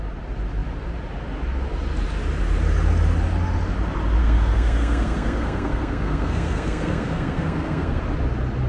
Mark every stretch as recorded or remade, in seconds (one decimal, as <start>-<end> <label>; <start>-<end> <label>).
0.0-4.2 recorded; 4.2-8.0 remade; 8.0-8.7 recorded